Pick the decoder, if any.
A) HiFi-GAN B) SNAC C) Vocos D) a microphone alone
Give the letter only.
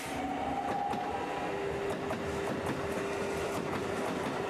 D